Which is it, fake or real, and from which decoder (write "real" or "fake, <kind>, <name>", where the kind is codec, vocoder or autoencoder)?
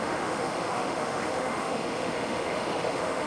fake, autoencoder, DAC-VAE